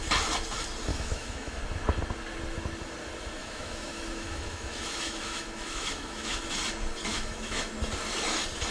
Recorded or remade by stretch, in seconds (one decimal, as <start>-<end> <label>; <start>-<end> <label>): 0.0-0.9 recorded; 0.9-1.6 remade; 1.6-3.4 recorded; 3.4-6.4 remade; 6.4-7.1 recorded; 7.1-7.7 remade; 7.7-8.7 recorded